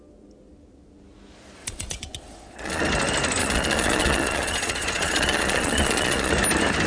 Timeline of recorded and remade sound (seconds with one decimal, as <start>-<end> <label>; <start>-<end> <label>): 0.0-1.6 recorded; 1.6-2.8 remade; 2.8-3.4 recorded; 3.4-6.3 remade; 6.3-6.9 recorded